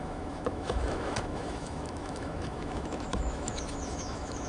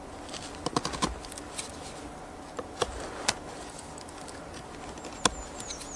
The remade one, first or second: first